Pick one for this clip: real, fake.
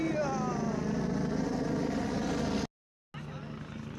real